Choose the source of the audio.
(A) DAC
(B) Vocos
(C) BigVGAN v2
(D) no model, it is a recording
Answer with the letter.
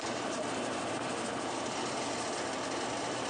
D